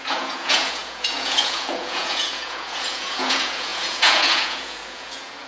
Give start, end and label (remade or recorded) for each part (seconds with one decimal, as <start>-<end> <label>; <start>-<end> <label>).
0.0-5.5 remade